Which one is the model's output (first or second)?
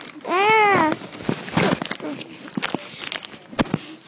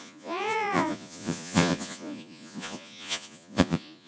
second